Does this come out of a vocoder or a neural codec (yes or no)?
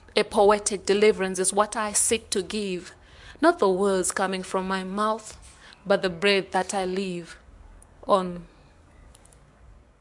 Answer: yes